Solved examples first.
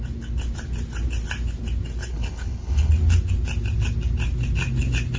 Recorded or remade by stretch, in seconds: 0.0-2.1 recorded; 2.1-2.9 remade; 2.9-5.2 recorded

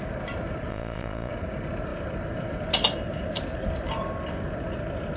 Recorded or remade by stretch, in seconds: 0.0-0.7 recorded; 0.7-1.3 remade; 1.3-5.2 recorded

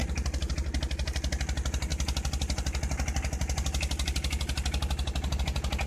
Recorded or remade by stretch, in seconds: 0.0-5.9 recorded

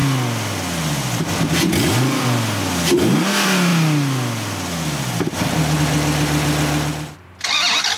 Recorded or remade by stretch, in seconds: 0.0-8.0 recorded

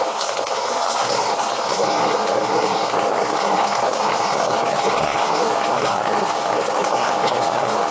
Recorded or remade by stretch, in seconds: 0.0-7.9 remade

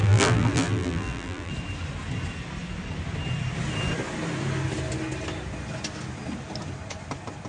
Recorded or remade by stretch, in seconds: 0.0-1.5 remade; 1.5-7.5 recorded

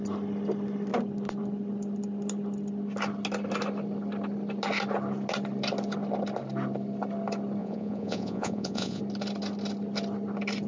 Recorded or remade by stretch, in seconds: 0.0-7.6 recorded; 7.6-9.0 remade; 9.0-10.7 recorded

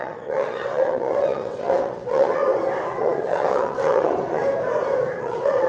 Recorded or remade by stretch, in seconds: 0.0-2.4 remade; 2.4-2.9 recorded; 2.9-4.4 remade; 4.4-5.2 recorded; 5.2-5.7 remade